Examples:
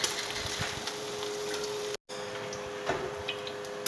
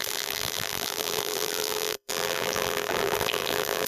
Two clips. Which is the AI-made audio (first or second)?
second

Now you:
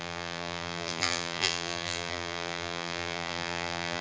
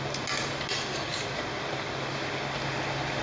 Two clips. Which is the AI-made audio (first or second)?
first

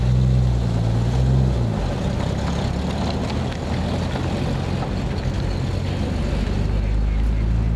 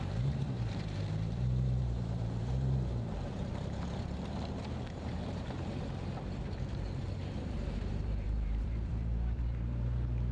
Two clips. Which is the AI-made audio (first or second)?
second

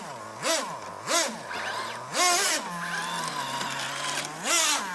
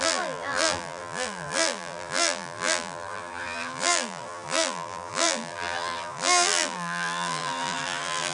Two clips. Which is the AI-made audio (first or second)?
second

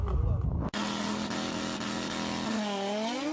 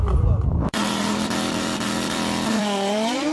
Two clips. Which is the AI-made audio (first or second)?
second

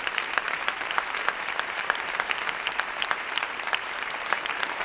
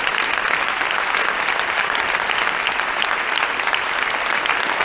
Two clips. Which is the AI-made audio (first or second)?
first